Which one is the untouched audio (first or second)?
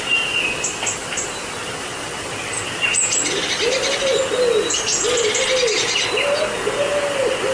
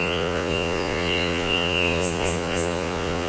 first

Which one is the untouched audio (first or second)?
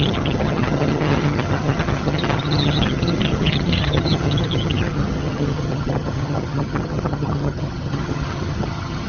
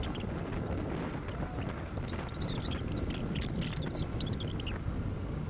second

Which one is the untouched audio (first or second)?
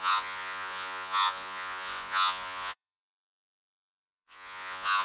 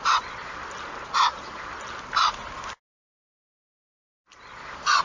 second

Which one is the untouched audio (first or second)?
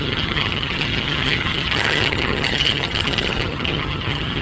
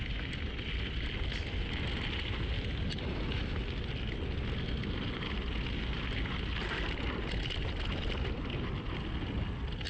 second